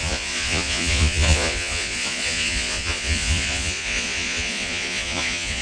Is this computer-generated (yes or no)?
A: yes